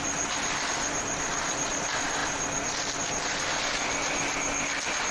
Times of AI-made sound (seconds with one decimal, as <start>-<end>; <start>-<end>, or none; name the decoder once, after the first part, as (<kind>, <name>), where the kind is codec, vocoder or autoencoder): none